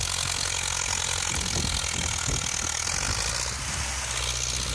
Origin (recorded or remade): recorded